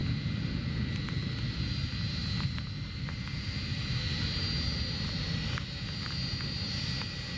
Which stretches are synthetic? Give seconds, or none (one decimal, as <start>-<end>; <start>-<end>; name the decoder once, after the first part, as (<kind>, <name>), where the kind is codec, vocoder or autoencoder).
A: none